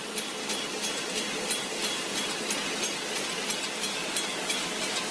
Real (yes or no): yes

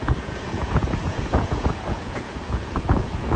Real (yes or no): no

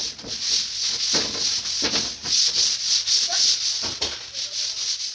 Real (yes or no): yes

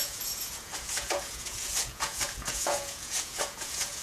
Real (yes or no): no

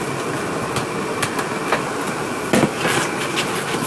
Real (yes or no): yes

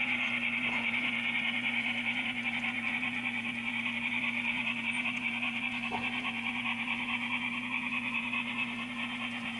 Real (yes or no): no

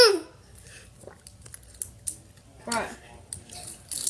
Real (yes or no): yes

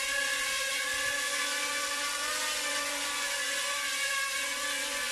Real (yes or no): no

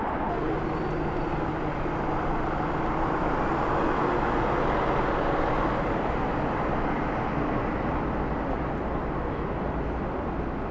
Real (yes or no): yes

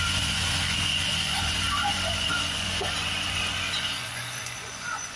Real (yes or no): no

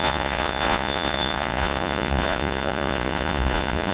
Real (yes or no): no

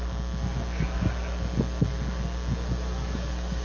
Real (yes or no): yes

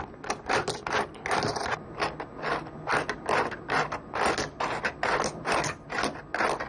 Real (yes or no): yes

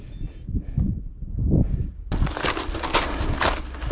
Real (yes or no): yes